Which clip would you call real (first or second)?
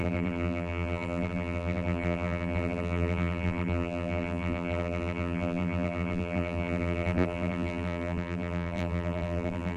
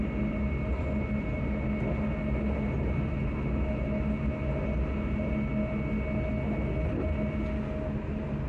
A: second